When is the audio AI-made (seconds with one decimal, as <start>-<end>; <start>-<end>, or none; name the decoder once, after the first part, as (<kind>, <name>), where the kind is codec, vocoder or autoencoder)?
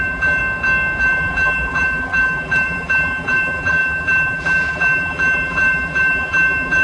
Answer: 0.0-0.4 (vocoder, BigVGAN v2); 1.0-6.8